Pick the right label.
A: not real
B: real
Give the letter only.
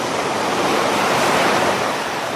A